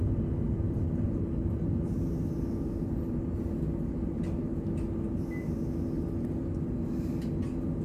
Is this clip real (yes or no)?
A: yes